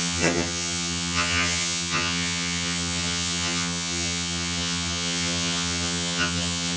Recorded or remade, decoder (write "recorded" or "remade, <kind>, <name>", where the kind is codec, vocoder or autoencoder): remade, vocoder, HiFi-GAN